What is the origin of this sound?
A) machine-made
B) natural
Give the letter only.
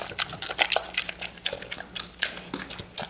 B